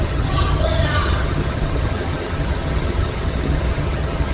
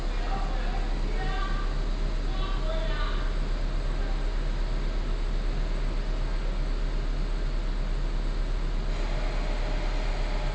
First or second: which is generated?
first